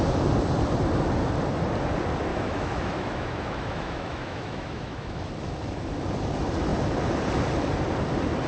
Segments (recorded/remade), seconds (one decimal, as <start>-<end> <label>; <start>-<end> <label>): 0.0-2.3 recorded; 2.3-5.3 remade; 5.3-8.5 recorded